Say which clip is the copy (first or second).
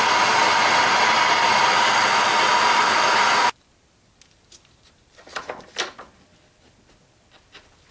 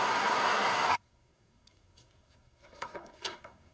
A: second